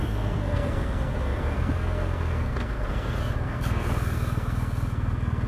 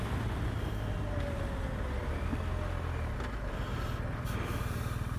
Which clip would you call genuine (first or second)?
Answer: second